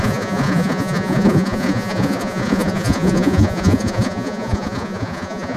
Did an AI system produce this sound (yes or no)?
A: yes